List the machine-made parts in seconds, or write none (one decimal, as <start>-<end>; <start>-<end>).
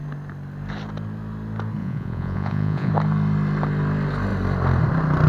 1.8-2.9